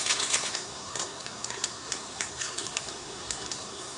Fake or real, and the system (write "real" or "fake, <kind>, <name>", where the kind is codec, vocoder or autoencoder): fake, codec, SNAC